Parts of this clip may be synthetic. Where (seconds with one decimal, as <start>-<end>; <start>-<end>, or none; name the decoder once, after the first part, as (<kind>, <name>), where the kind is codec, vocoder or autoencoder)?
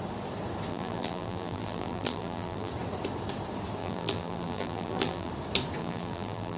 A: 0.7-2.7 (vocoder, BigVGAN v2); 3.8-5.3; 5.8-6.6